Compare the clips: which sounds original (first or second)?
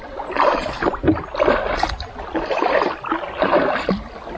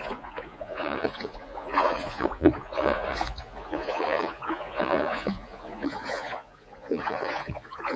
first